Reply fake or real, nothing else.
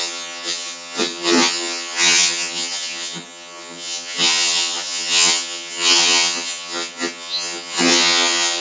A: fake